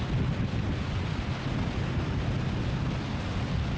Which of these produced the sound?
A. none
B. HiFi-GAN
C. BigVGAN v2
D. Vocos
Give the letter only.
A